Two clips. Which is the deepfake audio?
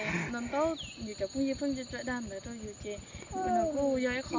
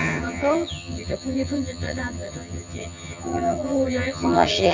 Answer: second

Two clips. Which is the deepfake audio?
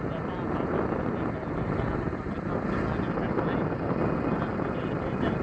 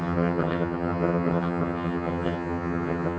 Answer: second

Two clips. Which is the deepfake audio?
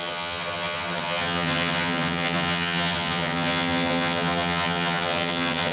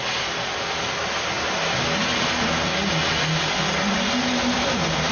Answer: first